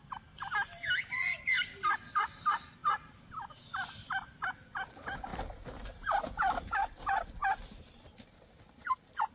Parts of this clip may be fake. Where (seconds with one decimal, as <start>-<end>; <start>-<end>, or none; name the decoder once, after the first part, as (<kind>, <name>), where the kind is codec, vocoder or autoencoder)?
none